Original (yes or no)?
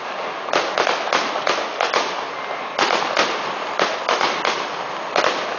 yes